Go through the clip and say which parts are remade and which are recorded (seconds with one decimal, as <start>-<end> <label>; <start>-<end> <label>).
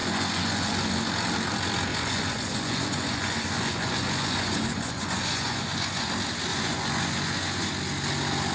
0.0-0.9 remade; 0.9-1.9 recorded; 1.9-6.1 remade; 6.1-6.5 recorded; 6.5-7.7 remade; 7.7-8.5 recorded